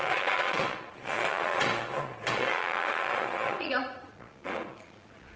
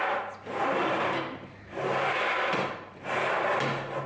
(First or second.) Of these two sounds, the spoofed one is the first